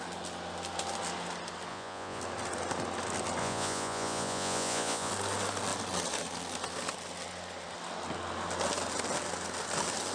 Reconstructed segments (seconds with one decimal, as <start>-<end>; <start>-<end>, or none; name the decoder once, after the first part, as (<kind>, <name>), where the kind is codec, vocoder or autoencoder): 1.7-2.2 (vocoder, Vocos); 3.4-5.1